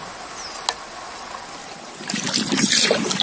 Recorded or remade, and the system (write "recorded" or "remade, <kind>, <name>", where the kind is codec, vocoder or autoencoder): recorded